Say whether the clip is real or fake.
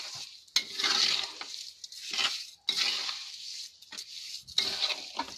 real